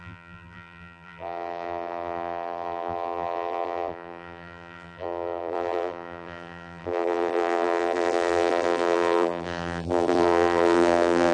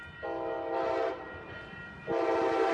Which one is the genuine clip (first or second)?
second